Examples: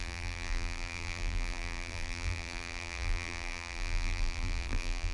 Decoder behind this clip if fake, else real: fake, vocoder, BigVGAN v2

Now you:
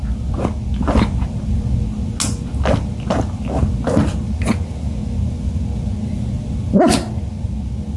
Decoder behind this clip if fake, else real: real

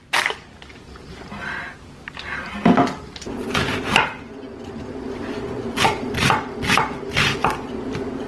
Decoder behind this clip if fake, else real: real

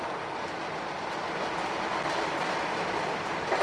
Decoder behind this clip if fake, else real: real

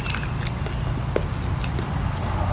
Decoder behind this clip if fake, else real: real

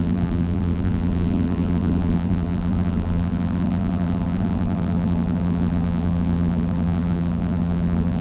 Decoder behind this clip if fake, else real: fake, vocoder, BigVGAN v2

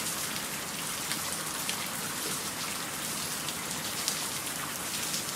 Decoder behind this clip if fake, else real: real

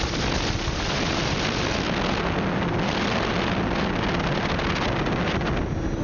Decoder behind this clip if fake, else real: real